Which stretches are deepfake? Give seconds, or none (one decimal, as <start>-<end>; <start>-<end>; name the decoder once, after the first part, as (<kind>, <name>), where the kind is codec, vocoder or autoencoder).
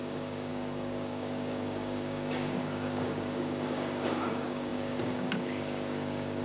0.0-6.4 (codec, DAC)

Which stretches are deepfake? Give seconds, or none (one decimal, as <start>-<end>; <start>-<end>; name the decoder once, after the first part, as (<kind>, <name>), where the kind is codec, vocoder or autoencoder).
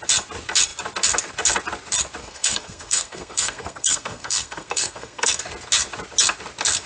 2.2-5.4 (codec, SNAC)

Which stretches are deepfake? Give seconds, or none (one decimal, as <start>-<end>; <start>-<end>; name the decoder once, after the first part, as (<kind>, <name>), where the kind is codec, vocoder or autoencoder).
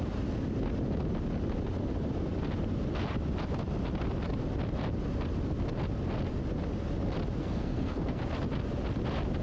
7.4-8.2 (codec, SNAC)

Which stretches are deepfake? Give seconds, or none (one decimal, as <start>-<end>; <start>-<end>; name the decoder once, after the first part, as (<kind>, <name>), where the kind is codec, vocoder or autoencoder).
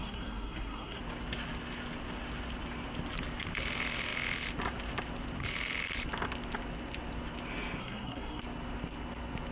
0.0-1.0 (codec, SNAC); 7.8-8.4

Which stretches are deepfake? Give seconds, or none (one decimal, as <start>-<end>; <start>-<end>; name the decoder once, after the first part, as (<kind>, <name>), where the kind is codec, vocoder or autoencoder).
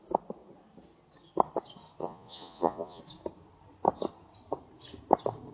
2.0-3.0 (vocoder, Vocos)